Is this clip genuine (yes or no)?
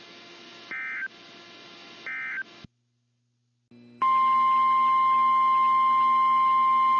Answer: yes